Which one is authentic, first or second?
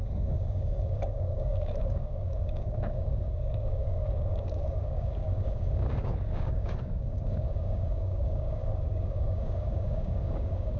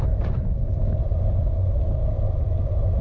second